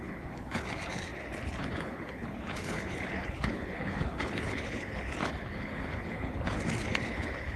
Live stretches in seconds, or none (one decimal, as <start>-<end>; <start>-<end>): none